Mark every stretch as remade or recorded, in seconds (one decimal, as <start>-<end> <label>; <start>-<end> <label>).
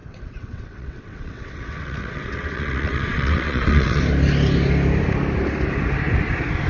0.0-4.0 remade; 4.0-6.7 recorded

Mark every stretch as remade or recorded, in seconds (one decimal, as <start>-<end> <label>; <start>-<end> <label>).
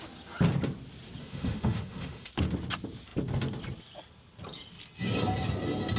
0.0-1.2 recorded; 1.2-2.3 remade; 2.3-6.0 recorded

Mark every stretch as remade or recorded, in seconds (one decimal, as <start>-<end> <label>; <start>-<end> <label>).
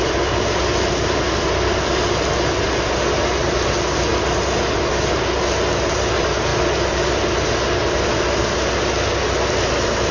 0.0-10.1 recorded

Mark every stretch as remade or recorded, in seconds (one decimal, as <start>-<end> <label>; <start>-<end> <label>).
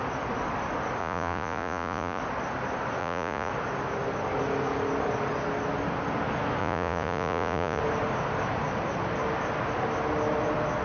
0.0-1.0 recorded; 1.0-2.2 remade; 2.2-3.0 recorded; 3.0-3.5 remade; 3.5-6.6 recorded; 6.6-7.8 remade; 7.8-10.8 recorded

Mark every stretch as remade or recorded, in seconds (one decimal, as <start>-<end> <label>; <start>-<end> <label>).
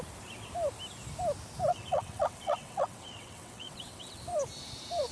0.0-1.7 recorded; 1.7-4.2 remade; 4.2-5.1 recorded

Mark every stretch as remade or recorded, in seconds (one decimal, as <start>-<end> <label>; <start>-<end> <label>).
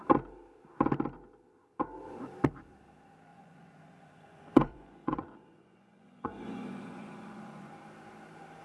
0.0-3.3 recorded; 3.3-7.7 remade; 7.7-8.6 recorded